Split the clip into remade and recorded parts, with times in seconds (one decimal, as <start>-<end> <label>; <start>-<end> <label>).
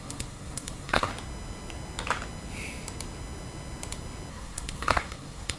0.0-1.1 remade; 1.1-4.3 recorded; 4.3-5.6 remade